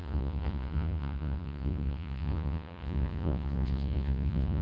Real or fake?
fake